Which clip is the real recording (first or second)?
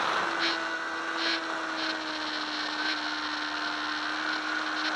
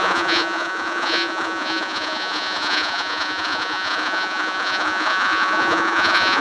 first